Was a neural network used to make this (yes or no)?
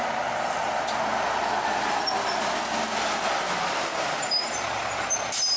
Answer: no